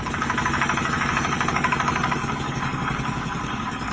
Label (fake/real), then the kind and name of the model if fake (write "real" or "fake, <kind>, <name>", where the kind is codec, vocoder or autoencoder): fake, codec, DAC